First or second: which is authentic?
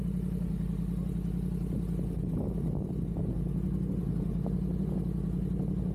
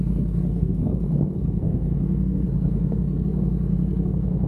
first